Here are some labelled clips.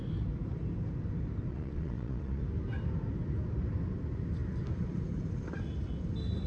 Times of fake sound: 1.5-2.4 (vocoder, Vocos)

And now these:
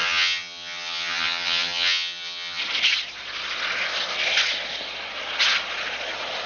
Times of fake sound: 0.0-2.6 (vocoder, HiFi-GAN)

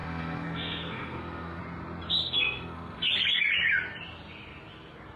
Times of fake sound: 0.0-1.6 (codec, SNAC); 2.2-3.1

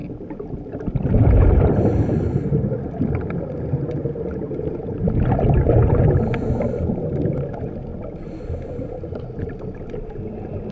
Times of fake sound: 0.0-3.4 (vocoder, BigVGAN v2); 7.9-8.5

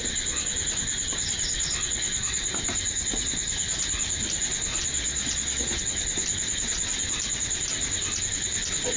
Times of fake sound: 4.7-5.8 (vocoder, Vocos)